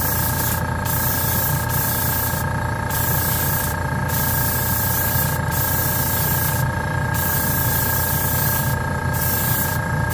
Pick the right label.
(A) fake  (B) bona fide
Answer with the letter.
A